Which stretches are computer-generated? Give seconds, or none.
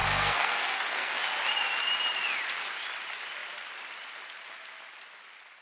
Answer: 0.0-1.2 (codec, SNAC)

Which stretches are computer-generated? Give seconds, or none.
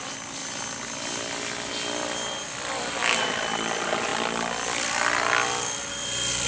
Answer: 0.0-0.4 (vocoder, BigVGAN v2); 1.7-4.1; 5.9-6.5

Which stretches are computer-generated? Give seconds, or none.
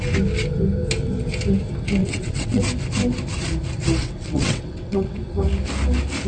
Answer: 2.0-2.6 (vocoder, WaveNeXt); 4.0-5.2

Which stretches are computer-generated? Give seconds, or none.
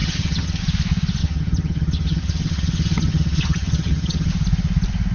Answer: 0.0-0.6 (vocoder, HiFi-GAN); 1.2-4.3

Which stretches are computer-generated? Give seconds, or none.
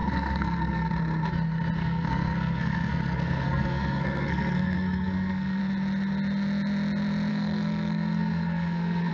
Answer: 0.0-0.9 (codec, SNAC); 1.8-5.6; 7.3-9.1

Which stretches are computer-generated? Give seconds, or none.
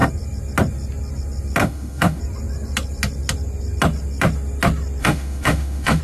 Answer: 1.6-2.2 (autoencoder, DAC-VAE); 5.0-6.0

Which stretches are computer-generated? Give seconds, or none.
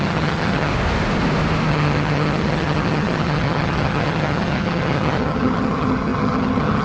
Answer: 0.0-0.7 (vocoder, HiFi-GAN); 1.7-6.8